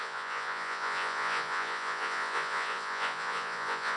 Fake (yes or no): yes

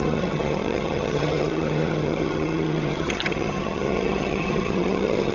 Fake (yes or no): yes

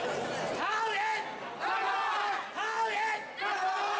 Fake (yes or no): no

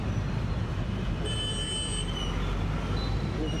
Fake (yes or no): no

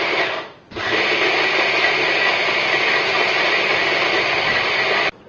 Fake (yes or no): no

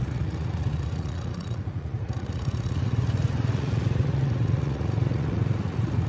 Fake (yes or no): yes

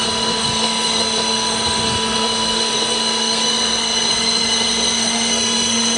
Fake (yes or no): yes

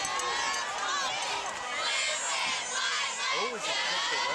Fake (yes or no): no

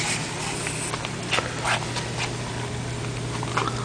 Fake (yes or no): no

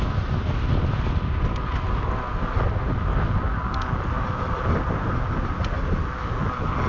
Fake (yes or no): no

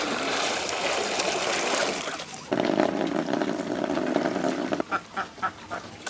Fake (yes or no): no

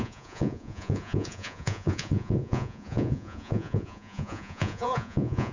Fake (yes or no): yes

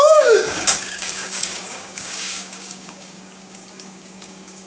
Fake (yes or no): yes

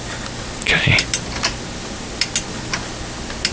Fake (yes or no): no